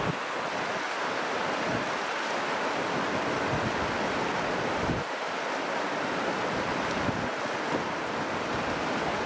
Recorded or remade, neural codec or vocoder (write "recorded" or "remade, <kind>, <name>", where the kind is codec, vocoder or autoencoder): recorded